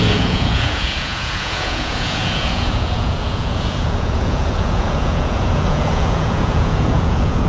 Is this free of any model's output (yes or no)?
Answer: no